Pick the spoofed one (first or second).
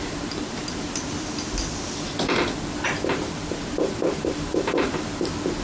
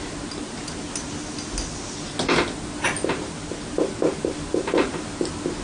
first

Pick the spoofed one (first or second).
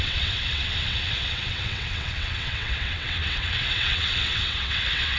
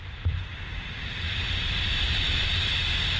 first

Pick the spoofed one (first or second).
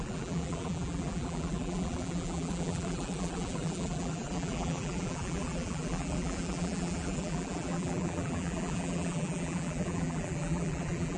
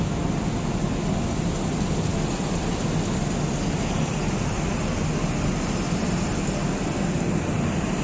first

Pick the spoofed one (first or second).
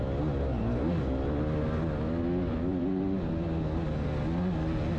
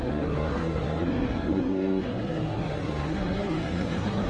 second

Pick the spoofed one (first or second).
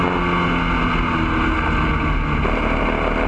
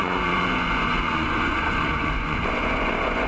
second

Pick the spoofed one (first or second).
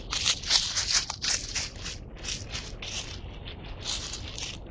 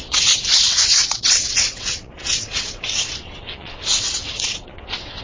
second